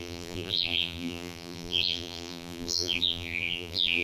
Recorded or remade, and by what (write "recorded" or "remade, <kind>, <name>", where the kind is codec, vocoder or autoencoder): remade, vocoder, BigVGAN v2